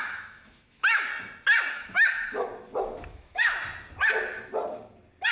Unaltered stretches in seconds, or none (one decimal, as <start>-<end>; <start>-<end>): 1.1-1.7; 2.5-3.1; 3.6-5.3